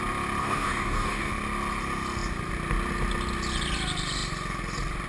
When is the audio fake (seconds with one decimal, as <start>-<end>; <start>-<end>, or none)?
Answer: 0.4-1.3